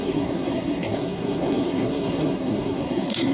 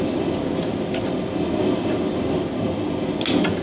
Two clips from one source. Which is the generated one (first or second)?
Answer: first